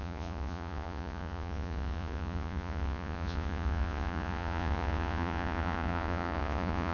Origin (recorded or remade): remade